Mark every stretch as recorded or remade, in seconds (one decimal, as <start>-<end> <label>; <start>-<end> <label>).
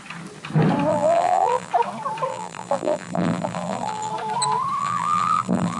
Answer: 0.0-0.9 recorded; 0.9-1.7 remade; 1.7-2.3 recorded; 2.3-4.1 remade; 4.1-4.8 recorded; 4.8-5.8 remade